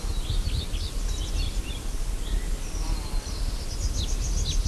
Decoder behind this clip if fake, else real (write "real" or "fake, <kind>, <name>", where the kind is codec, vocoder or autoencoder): real